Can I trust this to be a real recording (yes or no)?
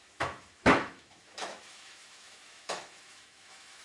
no